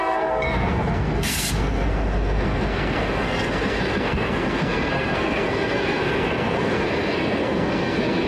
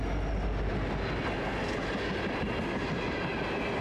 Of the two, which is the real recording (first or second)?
second